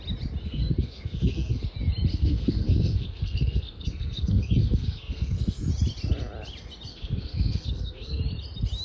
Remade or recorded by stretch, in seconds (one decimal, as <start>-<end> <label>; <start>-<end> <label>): 0.0-0.4 recorded; 0.4-1.6 remade; 1.6-2.1 recorded; 2.1-5.7 remade; 5.7-6.9 recorded; 6.9-8.2 remade; 8.2-8.8 recorded